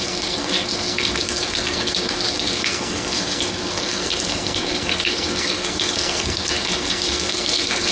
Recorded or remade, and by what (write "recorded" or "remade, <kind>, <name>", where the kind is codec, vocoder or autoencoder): remade, codec, SNAC